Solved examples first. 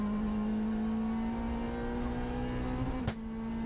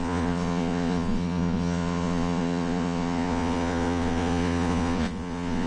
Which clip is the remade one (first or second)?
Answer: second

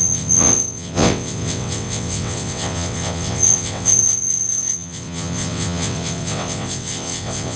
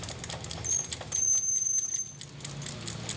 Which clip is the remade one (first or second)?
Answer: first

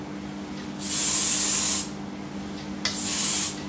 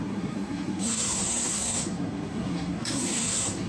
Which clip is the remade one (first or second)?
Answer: second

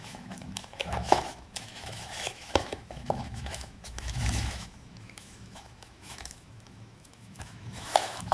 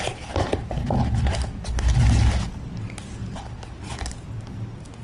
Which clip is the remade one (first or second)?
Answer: first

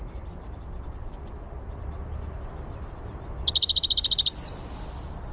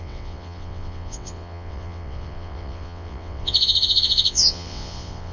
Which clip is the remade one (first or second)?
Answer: second